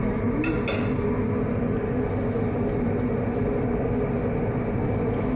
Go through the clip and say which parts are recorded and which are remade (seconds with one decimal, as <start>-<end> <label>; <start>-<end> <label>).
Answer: 0.0-5.4 recorded